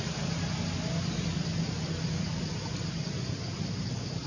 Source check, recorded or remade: recorded